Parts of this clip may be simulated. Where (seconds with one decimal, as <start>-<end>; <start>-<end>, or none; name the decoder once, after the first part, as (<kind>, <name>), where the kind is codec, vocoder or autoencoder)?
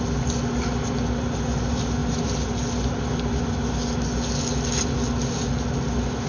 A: none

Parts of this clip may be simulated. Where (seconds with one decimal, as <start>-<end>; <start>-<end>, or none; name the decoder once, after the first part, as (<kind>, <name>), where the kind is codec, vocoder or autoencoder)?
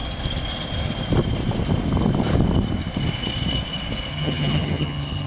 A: 4.1-5.3 (vocoder, HiFi-GAN)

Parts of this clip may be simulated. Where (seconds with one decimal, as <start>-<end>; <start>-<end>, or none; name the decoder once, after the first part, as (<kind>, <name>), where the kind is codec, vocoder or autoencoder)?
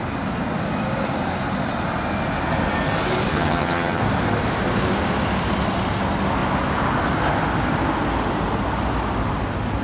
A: 3.3-4.0 (vocoder, HiFi-GAN)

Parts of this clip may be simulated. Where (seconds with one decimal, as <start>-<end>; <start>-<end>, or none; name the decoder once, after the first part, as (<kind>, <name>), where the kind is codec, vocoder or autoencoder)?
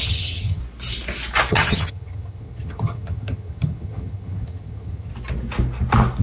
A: 0.0-0.6 (vocoder, HiFi-GAN); 1.5-5.1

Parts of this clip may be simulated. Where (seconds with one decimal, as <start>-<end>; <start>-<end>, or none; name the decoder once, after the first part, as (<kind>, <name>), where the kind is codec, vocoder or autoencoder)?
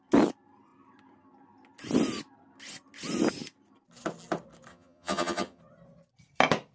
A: 4.7-5.6 (vocoder, HiFi-GAN)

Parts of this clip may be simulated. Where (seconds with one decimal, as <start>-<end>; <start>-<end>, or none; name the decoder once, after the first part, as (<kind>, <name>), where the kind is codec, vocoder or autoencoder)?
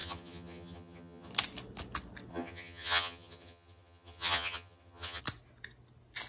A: 0.0-1.3 (vocoder, HiFi-GAN); 2.3-5.2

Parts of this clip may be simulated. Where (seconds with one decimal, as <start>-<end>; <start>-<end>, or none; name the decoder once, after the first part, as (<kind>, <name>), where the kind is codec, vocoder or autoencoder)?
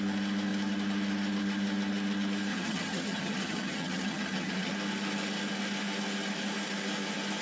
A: 2.5-4.7 (vocoder, HiFi-GAN)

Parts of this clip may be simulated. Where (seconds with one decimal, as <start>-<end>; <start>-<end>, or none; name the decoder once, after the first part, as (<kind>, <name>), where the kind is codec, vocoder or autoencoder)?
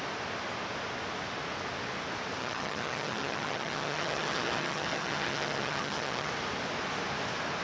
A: 2.4-6.3 (vocoder, HiFi-GAN)